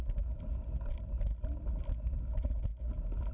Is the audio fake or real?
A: real